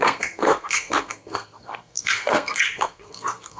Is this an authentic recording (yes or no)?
no